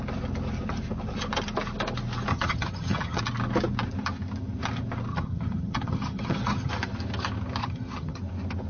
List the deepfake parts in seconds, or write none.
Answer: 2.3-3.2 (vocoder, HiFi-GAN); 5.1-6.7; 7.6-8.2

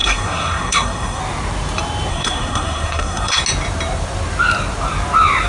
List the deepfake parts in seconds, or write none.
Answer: 0.0-1.2 (codec, SNAC); 2.1-3.4

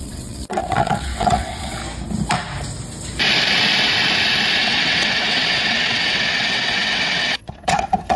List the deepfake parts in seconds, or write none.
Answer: 0.0-1.8 (vocoder, WaveNeXt); 4.6-8.2

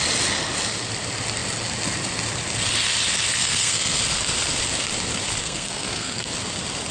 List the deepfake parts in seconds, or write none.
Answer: 3.4-4.0 (codec, SNAC); 5.4-6.3

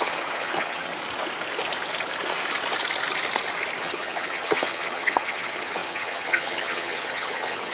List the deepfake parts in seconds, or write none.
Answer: 0.0-0.9 (vocoder, HiFi-GAN); 3.8-7.7

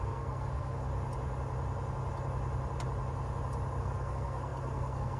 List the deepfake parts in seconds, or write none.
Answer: 0.0-0.9 (codec, SNAC); 3.8-5.2

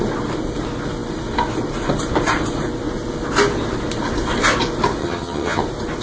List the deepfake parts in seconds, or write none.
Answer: 5.0-5.6 (vocoder, HiFi-GAN)